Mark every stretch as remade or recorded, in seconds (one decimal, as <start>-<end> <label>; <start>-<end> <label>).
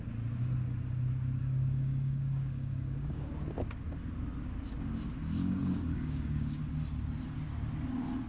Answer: 0.0-1.4 recorded; 1.4-3.3 remade; 3.3-5.4 recorded; 5.4-6.6 remade; 6.6-8.3 recorded